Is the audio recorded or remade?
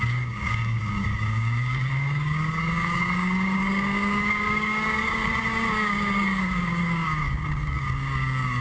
remade